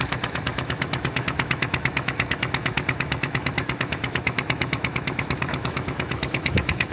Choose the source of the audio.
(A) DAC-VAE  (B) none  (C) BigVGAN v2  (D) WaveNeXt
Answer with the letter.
A